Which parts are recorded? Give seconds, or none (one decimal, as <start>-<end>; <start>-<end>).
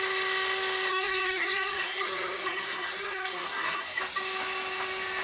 0.0-0.9; 4.0-5.2